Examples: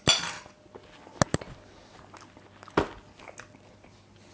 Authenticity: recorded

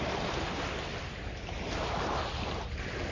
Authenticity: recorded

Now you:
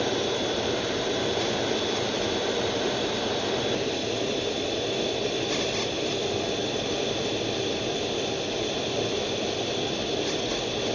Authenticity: recorded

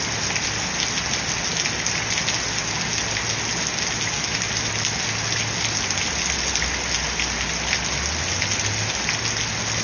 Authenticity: recorded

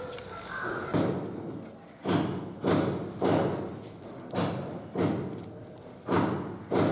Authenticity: recorded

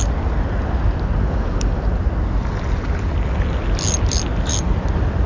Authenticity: recorded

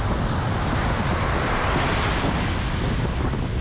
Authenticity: recorded